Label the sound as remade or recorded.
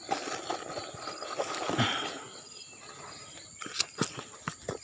recorded